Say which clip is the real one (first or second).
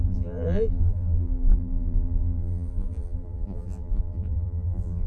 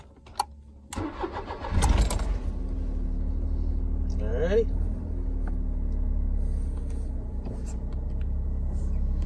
second